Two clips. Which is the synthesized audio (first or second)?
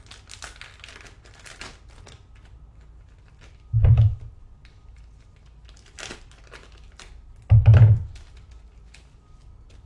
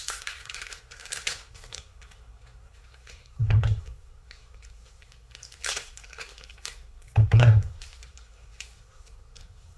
second